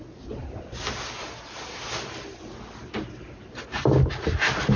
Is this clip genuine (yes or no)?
yes